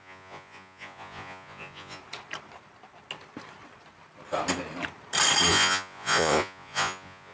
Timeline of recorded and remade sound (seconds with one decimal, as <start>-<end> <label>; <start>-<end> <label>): 0.0-2.0 remade; 2.0-5.5 recorded; 5.5-7.3 remade